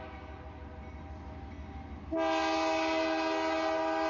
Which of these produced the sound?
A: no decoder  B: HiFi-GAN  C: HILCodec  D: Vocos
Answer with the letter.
A